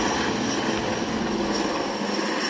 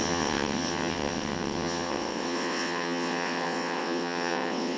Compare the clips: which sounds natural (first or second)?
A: first